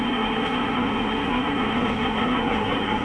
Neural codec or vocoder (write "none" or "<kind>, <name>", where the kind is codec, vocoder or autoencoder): codec, SNAC